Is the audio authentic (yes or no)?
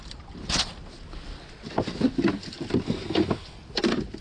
yes